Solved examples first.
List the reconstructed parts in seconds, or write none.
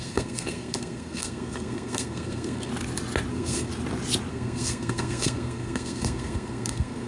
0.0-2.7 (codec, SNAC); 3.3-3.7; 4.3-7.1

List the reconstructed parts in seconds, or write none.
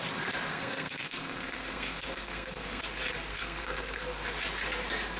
0.5-2.8 (codec, SNAC); 3.3-4.0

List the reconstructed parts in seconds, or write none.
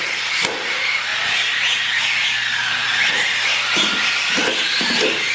none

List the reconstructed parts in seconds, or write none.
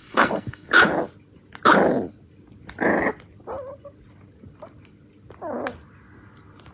0.0-0.7 (codec, SNAC)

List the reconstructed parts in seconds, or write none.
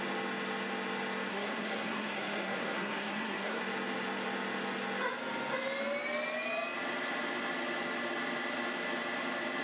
1.3-3.6 (codec, SNAC)